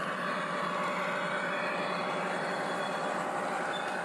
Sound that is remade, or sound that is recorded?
recorded